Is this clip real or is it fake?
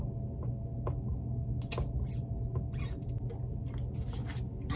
real